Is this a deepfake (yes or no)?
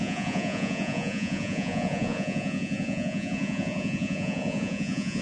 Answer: yes